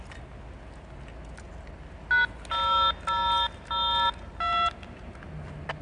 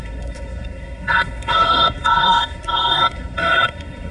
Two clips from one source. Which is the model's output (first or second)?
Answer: second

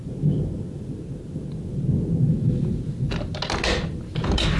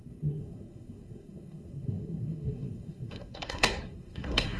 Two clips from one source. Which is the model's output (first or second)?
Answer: second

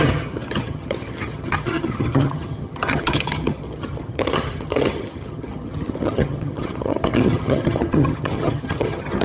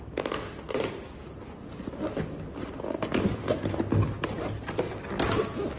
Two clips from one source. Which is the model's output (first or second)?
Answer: first